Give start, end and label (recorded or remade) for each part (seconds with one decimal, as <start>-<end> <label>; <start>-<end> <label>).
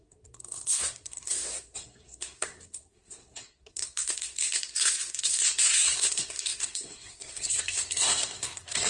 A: 0.0-8.9 remade